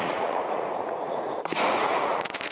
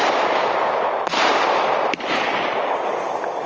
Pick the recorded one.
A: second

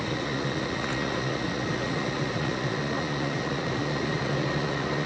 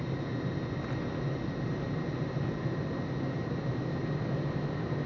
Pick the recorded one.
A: second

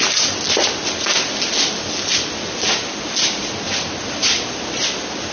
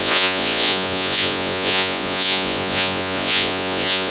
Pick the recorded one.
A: first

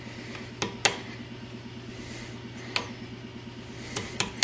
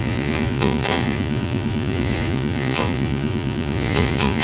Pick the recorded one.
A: first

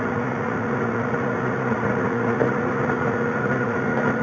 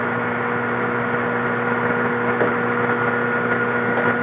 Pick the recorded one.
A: second